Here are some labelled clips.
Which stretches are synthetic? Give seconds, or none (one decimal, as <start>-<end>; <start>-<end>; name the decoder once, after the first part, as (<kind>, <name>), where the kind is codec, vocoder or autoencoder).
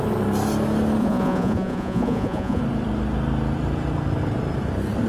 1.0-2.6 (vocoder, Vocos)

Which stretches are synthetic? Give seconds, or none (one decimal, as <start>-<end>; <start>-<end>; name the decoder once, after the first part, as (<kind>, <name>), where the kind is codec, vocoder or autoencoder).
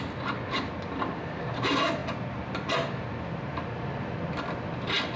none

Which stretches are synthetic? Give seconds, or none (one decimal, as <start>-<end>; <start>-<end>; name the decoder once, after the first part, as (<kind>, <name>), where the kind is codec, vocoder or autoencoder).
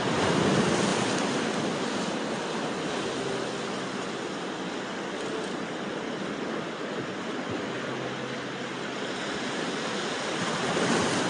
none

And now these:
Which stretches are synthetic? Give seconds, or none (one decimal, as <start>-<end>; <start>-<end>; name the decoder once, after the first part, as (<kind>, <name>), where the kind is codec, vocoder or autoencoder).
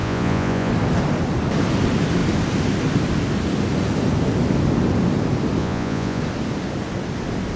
0.0-0.7 (vocoder, Vocos); 5.6-6.2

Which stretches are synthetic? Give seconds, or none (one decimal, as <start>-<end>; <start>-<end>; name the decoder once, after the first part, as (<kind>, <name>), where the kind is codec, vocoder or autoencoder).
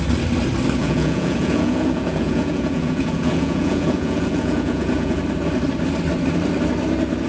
0.8-5.2 (vocoder, Vocos)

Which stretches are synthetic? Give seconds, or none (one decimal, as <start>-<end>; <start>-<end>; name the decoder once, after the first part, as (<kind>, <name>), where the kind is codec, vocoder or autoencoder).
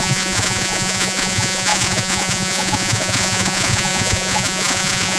0.0-5.2 (vocoder, Vocos)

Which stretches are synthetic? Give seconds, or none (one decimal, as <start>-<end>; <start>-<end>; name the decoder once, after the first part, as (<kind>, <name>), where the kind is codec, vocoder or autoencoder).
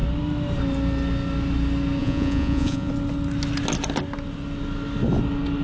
2.0-2.9 (vocoder, Vocos)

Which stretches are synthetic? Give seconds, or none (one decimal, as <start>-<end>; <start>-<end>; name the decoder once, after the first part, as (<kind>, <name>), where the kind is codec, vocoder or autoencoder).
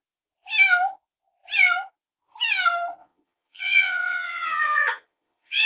3.0-5.7 (vocoder, Vocos)